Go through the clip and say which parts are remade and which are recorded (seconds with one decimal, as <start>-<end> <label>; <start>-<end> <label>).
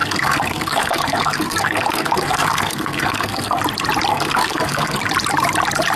0.0-3.6 remade; 3.6-4.1 recorded; 4.1-5.0 remade; 5.0-6.0 recorded